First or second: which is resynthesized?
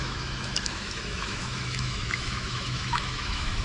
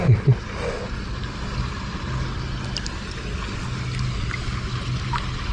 first